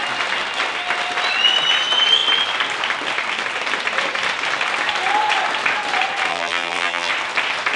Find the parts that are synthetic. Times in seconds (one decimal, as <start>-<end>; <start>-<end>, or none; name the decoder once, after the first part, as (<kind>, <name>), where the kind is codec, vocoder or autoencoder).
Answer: 6.3-7.1 (vocoder, BigVGAN v2)